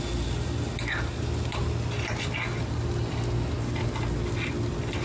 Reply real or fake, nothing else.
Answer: real